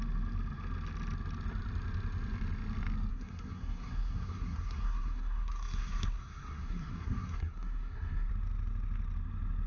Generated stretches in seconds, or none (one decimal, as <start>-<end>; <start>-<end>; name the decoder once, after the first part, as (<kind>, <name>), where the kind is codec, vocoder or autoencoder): 3.1-8.3 (codec, SNAC)